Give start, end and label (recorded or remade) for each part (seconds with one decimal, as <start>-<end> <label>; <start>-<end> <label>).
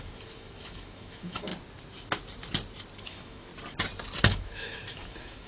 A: 0.0-1.5 remade; 1.5-3.0 recorded; 3.0-3.5 remade; 3.5-4.2 recorded; 4.2-5.5 remade